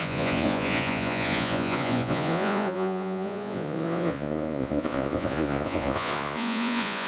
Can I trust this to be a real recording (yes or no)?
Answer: no